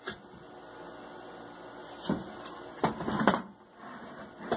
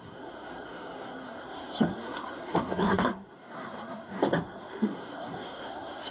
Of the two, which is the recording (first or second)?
first